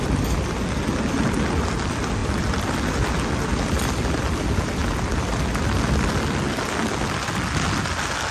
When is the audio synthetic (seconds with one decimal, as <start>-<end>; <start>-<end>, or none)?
none